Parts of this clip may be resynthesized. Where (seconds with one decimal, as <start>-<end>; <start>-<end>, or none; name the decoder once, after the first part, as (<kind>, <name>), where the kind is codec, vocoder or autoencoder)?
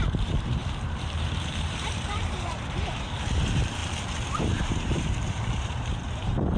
0.0-3.8 (vocoder, BigVGAN v2); 4.4-6.6